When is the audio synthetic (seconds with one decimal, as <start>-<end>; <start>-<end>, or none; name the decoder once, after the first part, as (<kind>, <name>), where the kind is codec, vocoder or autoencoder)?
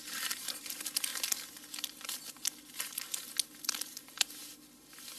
0.0-1.1 (vocoder, BigVGAN v2); 4.0-4.4